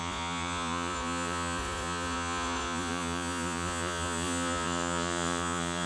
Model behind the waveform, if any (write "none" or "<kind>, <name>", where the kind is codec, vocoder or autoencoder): vocoder, Vocos